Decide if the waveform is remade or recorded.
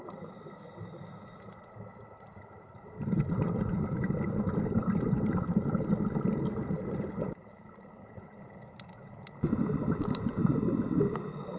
recorded